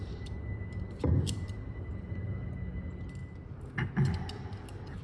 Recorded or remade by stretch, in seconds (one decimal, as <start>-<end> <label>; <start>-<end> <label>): 0.0-2.5 remade; 2.5-5.0 recorded